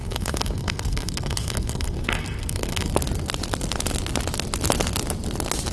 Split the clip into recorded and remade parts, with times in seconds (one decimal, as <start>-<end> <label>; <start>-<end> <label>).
0.0-2.9 remade; 2.9-5.7 recorded

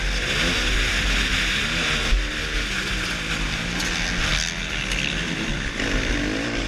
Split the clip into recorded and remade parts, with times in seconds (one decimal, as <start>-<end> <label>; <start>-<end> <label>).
0.0-6.7 recorded

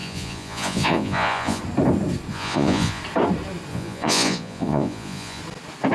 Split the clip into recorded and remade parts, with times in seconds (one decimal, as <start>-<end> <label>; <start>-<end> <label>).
0.0-1.6 remade; 1.6-2.3 recorded; 2.3-3.0 remade; 3.0-3.7 recorded; 3.7-5.4 remade; 5.4-5.9 recorded

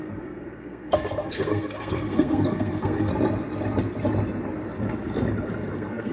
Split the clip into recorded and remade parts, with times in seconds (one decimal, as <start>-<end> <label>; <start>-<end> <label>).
0.0-3.1 remade; 3.1-5.5 recorded; 5.5-6.1 remade

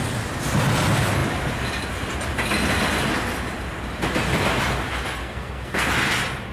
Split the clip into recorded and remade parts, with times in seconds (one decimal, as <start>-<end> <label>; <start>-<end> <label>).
0.0-5.2 recorded; 5.2-5.9 remade; 5.9-6.5 recorded

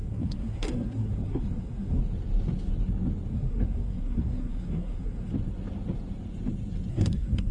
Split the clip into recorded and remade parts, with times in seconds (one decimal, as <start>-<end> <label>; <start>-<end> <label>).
0.0-2.0 remade; 2.0-3.3 recorded; 3.3-5.3 remade; 5.3-6.9 recorded; 6.9-7.5 remade

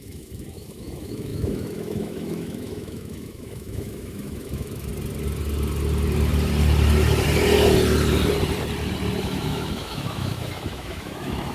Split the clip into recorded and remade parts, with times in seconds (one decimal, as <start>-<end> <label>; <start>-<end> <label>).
0.0-4.9 remade; 4.9-9.2 recorded; 9.2-11.5 remade

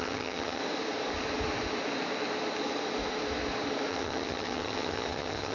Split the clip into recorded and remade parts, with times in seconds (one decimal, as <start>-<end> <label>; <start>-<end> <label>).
0.0-0.6 remade; 0.6-3.9 recorded; 3.9-5.5 remade